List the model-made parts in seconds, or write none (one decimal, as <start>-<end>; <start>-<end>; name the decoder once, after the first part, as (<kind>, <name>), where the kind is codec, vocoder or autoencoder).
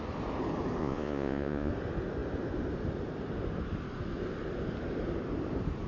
0.8-1.7 (vocoder, Vocos)